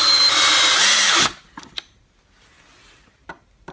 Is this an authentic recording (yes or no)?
no